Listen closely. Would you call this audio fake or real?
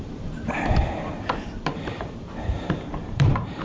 fake